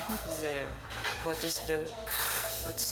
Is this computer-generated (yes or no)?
yes